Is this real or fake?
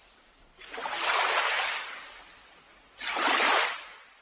real